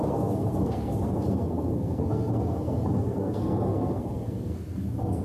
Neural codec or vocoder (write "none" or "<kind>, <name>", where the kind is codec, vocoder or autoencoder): codec, SNAC